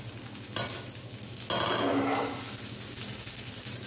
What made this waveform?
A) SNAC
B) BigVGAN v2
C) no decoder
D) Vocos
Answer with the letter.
C